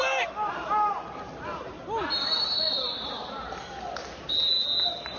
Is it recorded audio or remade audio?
recorded